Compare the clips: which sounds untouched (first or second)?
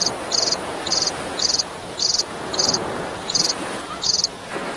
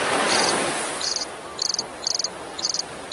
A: second